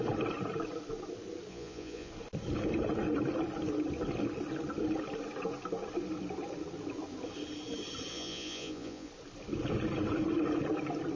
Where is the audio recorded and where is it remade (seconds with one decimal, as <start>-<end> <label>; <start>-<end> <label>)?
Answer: 0.0-1.5 recorded; 1.5-2.1 remade; 2.1-8.1 recorded; 8.1-9.1 remade; 9.1-11.2 recorded